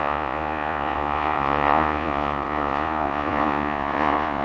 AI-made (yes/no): yes